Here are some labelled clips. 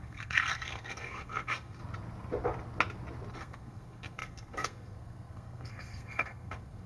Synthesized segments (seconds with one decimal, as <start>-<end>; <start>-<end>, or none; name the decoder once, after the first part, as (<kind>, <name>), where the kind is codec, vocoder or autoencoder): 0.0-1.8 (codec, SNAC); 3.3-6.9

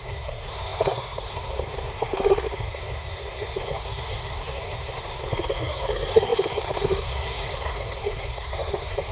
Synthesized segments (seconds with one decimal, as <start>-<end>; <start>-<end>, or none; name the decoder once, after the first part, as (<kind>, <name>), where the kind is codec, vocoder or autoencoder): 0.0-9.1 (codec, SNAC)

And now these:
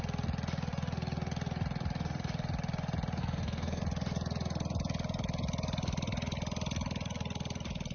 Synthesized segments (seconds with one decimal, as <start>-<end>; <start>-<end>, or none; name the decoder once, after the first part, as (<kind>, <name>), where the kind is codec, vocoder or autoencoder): 3.2-3.8 (codec, SNAC)